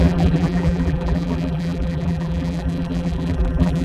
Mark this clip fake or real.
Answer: fake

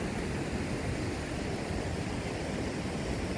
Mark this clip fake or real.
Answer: fake